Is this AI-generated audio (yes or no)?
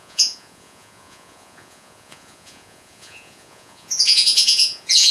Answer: yes